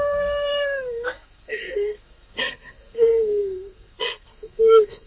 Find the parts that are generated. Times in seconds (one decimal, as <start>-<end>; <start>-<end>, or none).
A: 0.0-5.1